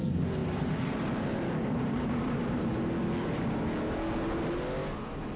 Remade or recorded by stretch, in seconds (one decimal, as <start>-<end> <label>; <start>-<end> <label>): 0.0-0.4 recorded; 0.4-2.8 remade; 2.8-5.4 recorded